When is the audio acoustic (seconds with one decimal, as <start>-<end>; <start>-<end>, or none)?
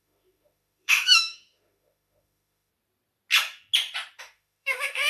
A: 2.7-4.2